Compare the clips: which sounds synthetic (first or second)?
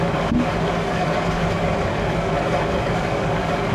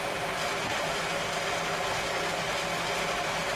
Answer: first